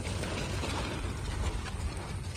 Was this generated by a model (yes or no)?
no